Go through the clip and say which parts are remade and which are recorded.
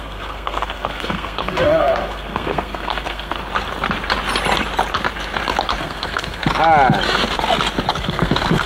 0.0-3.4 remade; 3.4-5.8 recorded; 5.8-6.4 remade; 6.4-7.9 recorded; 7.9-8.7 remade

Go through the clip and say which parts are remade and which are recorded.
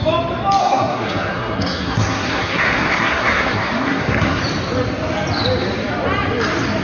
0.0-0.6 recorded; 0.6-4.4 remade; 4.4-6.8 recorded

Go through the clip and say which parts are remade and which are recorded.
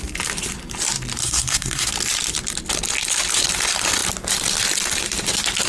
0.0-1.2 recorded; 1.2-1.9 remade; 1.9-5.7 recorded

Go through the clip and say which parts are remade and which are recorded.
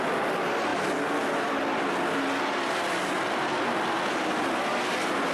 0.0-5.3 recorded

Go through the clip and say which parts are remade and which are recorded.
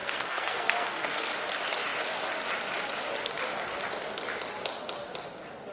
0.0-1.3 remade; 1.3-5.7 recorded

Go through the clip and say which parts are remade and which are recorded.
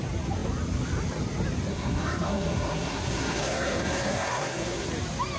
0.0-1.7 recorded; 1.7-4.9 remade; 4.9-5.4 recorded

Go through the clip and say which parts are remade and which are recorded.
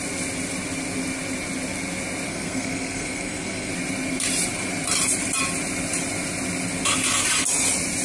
0.0-2.3 recorded; 2.3-3.7 remade; 3.7-8.0 recorded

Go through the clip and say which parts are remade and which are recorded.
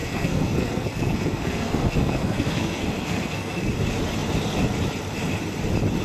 0.0-3.6 remade; 3.6-6.0 recorded